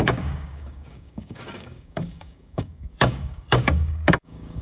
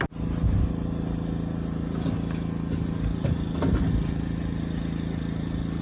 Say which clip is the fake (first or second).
first